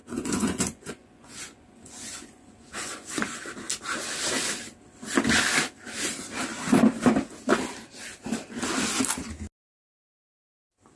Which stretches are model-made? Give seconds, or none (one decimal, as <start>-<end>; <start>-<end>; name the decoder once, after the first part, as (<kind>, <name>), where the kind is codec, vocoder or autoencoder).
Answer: 0.0-3.4 (vocoder, Vocos)